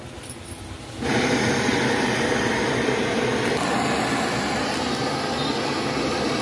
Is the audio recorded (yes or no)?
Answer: yes